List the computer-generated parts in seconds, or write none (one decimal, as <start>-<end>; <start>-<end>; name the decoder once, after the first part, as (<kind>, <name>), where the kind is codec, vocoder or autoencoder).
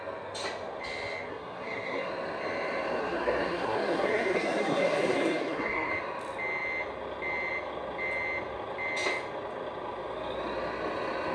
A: 1.3-2.1 (codec, SNAC); 3.0-5.9